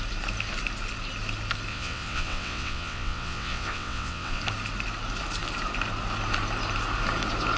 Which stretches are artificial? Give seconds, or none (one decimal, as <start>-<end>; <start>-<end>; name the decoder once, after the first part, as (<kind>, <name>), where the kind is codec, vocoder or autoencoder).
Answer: 1.7-4.4 (vocoder, WaveNeXt)